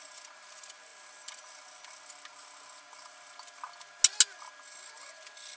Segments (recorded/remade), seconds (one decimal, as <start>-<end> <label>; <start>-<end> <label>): 0.0-5.6 recorded